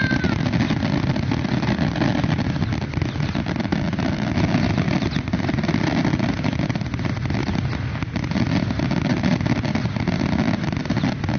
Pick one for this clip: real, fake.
real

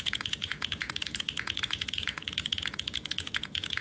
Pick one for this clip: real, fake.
fake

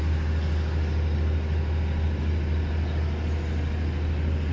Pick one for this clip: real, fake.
real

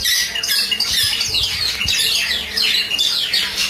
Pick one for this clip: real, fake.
real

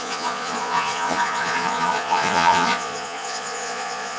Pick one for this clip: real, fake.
fake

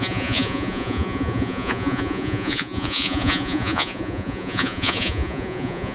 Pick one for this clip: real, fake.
fake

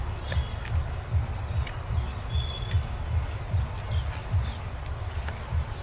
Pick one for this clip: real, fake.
real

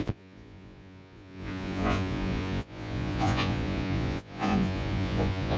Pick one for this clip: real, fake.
fake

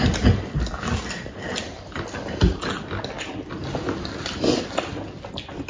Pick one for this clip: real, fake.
real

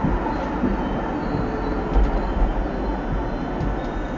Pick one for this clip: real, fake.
real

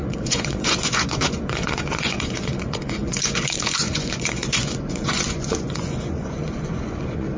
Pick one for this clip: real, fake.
fake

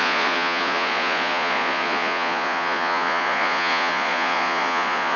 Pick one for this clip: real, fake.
fake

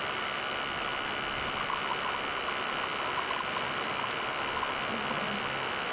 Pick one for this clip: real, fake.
real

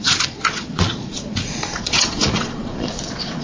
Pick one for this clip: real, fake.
fake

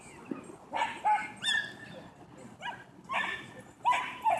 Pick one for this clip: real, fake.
real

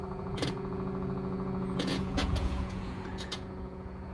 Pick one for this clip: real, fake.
fake